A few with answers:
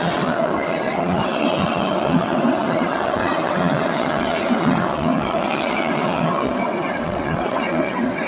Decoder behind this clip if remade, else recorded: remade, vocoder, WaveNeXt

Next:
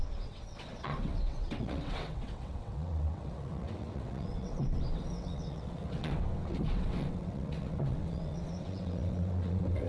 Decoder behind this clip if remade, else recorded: remade, vocoder, WaveNeXt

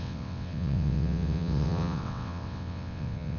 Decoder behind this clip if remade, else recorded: remade, vocoder, WaveNeXt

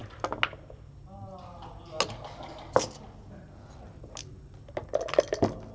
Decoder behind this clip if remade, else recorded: recorded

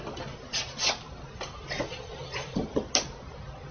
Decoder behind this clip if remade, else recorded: recorded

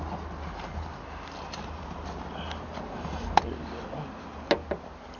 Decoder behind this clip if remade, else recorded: recorded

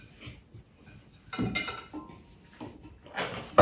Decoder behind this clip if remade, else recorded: recorded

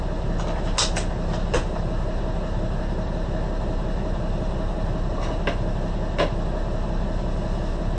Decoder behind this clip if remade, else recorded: recorded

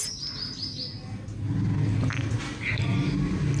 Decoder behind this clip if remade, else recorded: recorded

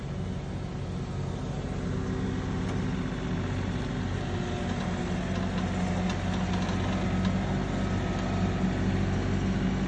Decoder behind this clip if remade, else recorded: recorded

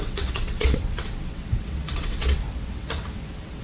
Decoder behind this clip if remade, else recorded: remade, vocoder, WaveNeXt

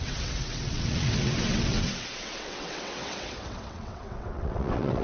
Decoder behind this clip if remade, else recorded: remade, vocoder, WaveNeXt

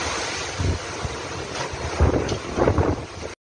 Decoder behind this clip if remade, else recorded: recorded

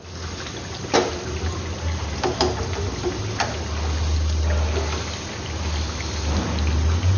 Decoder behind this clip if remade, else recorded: recorded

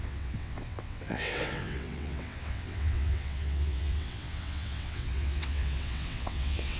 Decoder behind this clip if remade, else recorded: remade, vocoder, WaveNeXt